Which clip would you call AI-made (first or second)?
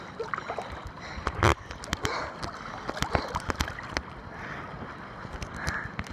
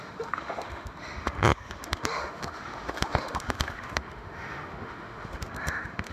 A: second